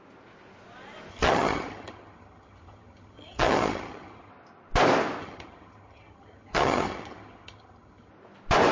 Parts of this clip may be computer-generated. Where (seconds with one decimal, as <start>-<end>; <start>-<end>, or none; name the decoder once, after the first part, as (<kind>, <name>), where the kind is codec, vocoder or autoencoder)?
1.1-4.3 (vocoder, HiFi-GAN); 5.2-8.1